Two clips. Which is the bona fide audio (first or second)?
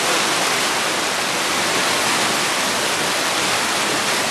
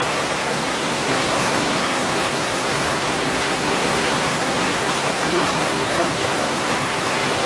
first